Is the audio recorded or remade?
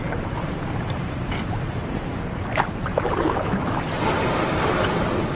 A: remade